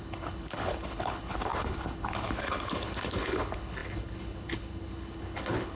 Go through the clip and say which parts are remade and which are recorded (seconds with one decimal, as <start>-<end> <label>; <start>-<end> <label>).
0.0-5.8 remade

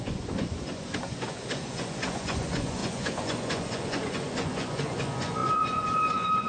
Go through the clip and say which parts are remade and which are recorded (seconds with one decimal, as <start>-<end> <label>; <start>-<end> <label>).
0.0-6.5 remade